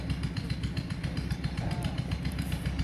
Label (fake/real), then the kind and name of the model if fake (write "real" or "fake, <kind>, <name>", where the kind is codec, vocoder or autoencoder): real